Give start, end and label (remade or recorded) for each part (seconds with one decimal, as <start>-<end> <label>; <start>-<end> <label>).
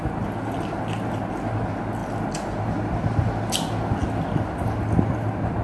0.0-5.6 recorded